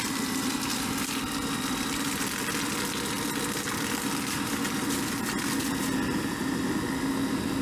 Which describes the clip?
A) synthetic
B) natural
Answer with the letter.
B